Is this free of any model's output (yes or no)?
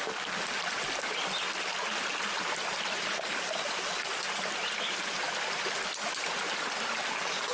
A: yes